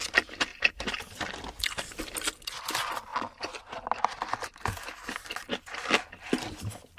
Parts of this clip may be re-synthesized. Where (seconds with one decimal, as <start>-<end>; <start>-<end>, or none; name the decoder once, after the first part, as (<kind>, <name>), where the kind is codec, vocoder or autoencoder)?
0.5-2.0 (vocoder, BigVGAN v2)